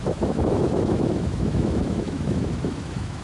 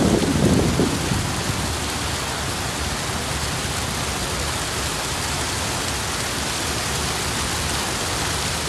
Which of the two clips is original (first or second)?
second